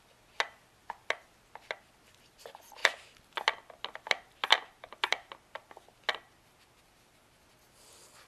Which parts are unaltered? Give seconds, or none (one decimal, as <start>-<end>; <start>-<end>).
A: 0.0-8.3